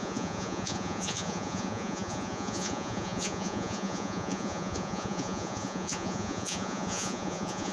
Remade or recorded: remade